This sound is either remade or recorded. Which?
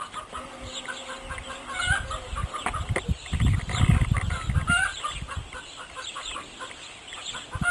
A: recorded